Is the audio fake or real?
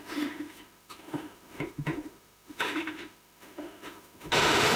fake